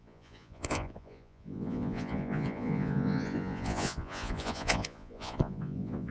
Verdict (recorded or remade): remade